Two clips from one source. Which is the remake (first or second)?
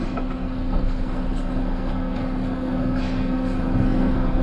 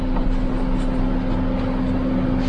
first